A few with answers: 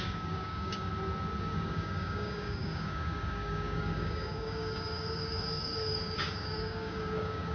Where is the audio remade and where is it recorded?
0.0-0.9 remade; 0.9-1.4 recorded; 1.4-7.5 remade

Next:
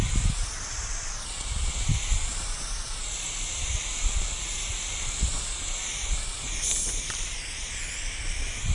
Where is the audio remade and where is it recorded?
0.0-1.9 remade; 1.9-5.4 recorded; 5.4-8.7 remade